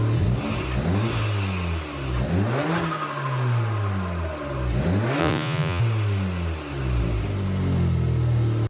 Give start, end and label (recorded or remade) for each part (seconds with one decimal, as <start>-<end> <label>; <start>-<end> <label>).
0.0-5.2 recorded; 5.2-5.8 remade; 5.8-8.7 recorded